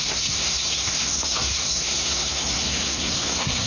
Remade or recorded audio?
remade